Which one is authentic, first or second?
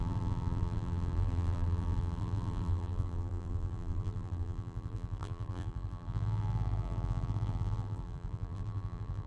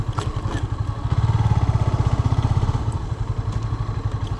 second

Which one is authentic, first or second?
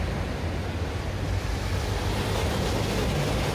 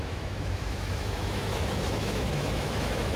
first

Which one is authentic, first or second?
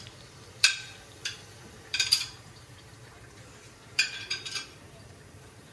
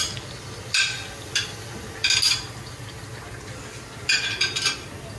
second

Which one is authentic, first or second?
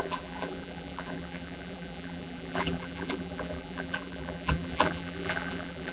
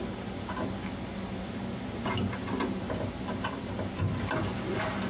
second